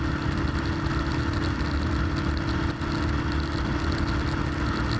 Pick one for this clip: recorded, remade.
recorded